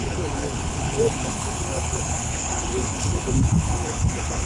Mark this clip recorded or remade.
remade